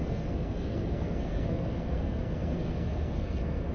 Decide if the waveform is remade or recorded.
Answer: remade